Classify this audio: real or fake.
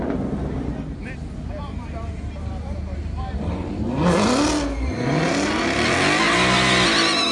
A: real